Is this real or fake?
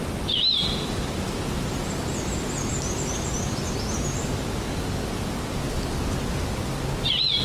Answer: real